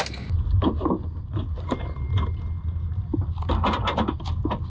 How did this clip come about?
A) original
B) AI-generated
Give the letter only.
A